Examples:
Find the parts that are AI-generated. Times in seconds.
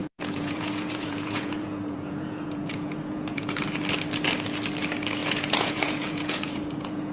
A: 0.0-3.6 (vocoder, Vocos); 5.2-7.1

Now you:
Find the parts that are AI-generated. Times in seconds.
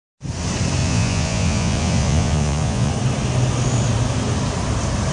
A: 0.8-2.9 (vocoder, Vocos)